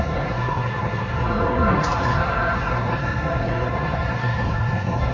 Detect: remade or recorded remade